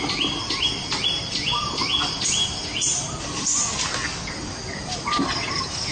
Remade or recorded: recorded